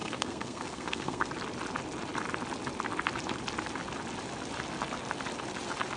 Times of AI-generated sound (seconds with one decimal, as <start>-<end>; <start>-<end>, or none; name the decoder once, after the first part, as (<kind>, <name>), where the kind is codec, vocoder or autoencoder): 0.0-1.3 (codec, SNAC)